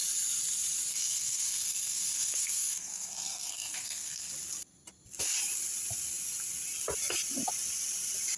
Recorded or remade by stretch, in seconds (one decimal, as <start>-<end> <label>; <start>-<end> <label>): 0.0-0.9 recorded; 0.9-4.3 remade; 4.3-8.4 recorded